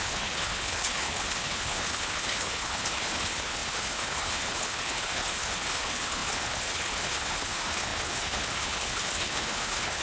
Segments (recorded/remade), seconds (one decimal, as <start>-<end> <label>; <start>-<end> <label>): 0.0-10.0 remade